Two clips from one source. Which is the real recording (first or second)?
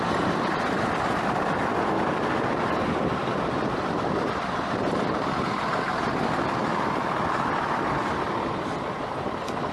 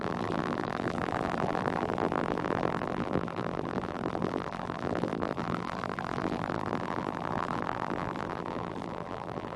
first